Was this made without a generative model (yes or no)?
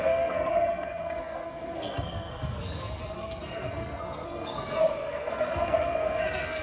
no